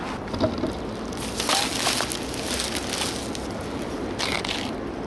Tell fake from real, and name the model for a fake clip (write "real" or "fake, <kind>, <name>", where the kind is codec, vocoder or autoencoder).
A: real